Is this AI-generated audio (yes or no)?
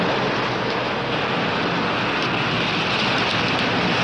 no